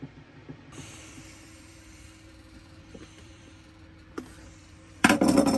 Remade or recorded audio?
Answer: remade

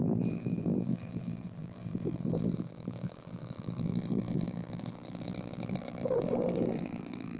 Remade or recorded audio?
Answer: remade